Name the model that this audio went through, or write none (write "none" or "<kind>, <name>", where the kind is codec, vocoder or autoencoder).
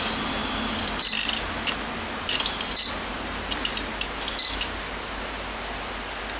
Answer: none